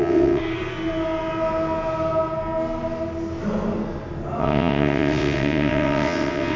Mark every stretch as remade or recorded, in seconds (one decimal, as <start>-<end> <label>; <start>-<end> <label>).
0.0-0.4 remade; 0.4-4.4 recorded; 4.4-6.6 remade

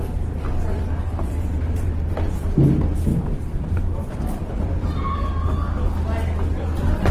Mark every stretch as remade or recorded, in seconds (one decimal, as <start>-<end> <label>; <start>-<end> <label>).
0.0-1.1 recorded; 1.1-1.9 remade; 1.9-3.1 recorded; 3.1-4.2 remade; 4.2-7.1 recorded

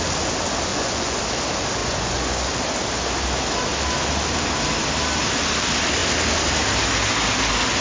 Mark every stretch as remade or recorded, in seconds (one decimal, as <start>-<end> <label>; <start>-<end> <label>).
0.0-0.7 recorded; 0.7-1.2 remade; 1.2-1.8 recorded; 1.8-2.5 remade; 2.5-7.8 recorded

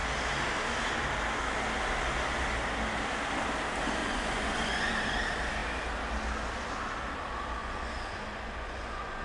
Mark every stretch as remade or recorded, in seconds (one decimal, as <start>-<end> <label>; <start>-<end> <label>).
0.0-4.0 recorded; 4.0-4.9 remade; 4.9-7.6 recorded; 7.6-9.2 remade

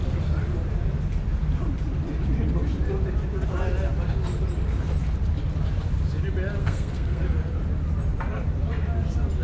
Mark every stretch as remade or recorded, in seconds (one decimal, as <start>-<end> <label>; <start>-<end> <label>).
0.0-6.6 recorded; 6.6-7.2 remade; 7.2-9.4 recorded